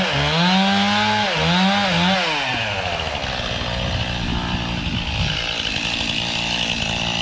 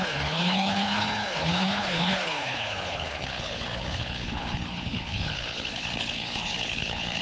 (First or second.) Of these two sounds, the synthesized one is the second